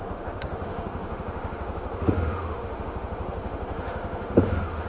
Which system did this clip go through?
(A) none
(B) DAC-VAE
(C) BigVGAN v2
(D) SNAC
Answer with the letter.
B